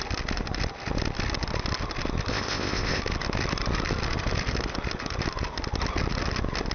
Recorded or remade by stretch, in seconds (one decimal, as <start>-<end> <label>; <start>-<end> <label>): 0.0-2.3 recorded; 2.3-3.0 remade; 3.0-6.7 recorded